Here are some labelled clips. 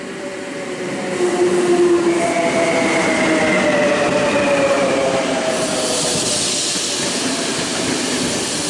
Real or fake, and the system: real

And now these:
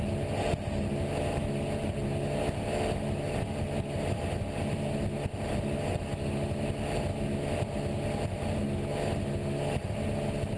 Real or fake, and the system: real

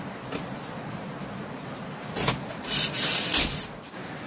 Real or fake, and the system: real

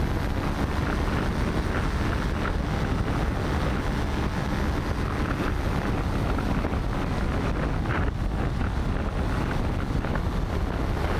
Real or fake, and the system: real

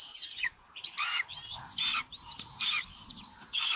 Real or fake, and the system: fake, vocoder, BigVGAN v2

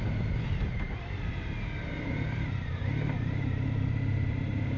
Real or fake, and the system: fake, vocoder, BigVGAN v2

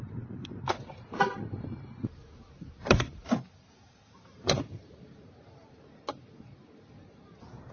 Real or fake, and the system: fake, vocoder, BigVGAN v2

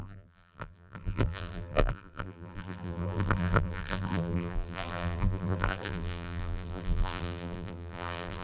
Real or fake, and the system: fake, vocoder, BigVGAN v2